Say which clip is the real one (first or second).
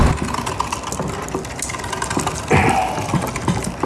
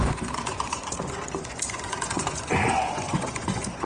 first